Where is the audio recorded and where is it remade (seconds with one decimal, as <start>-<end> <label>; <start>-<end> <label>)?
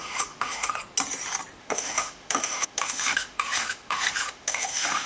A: 0.0-0.7 remade; 0.7-1.6 recorded; 1.6-5.1 remade